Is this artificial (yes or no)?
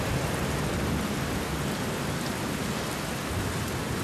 no